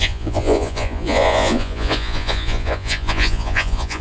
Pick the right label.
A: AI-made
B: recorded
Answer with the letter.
A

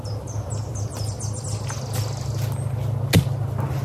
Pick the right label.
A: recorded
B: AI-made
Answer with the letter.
A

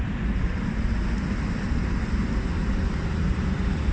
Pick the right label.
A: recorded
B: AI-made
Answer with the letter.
A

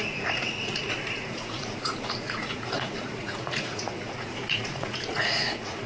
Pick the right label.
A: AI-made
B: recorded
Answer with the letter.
A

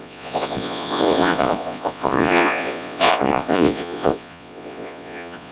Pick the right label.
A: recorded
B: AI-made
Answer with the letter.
B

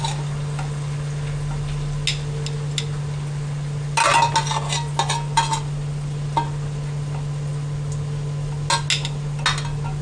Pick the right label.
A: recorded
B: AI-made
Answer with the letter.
A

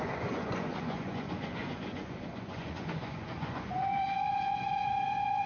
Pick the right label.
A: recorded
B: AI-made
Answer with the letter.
B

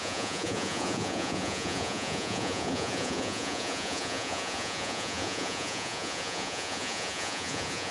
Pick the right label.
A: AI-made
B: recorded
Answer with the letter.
A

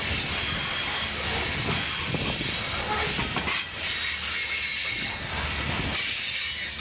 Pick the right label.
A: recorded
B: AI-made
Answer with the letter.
A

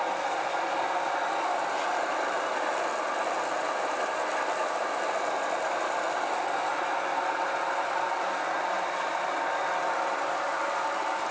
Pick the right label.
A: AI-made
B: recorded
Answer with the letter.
B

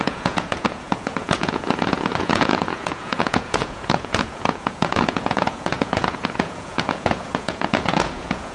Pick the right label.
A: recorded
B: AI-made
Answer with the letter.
B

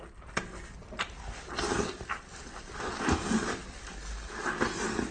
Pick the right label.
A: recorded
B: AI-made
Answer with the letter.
A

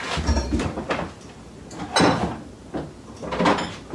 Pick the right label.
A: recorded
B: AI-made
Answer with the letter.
A